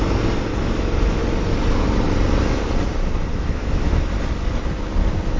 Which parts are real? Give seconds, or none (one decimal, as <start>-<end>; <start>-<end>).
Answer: 0.0-0.5; 1.2-3.3; 4.0-5.4